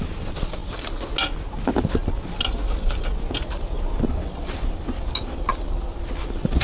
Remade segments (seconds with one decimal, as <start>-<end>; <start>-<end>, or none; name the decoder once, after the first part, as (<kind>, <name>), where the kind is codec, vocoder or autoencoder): none